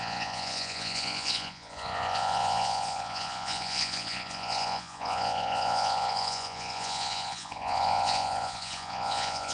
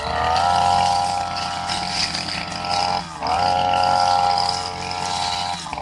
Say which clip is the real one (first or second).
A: second